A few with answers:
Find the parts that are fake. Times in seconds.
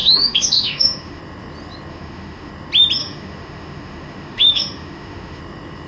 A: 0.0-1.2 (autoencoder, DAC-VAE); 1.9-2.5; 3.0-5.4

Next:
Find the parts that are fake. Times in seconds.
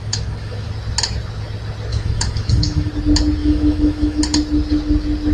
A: 0.0-0.7 (autoencoder, DAC-VAE); 1.9-2.9; 3.4-4.2